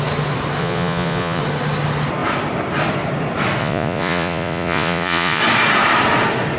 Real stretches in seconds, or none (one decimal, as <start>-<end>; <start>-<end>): 0.0-0.6; 1.4-3.6; 5.4-6.6